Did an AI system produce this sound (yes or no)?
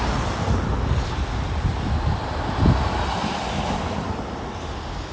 no